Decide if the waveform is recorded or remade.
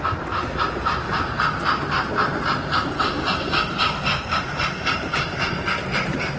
remade